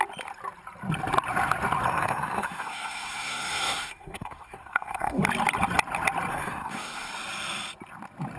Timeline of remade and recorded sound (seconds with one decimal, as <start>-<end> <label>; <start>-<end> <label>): 0.0-1.9 recorded; 1.9-5.2 remade; 5.2-6.3 recorded; 6.3-7.1 remade; 7.1-8.4 recorded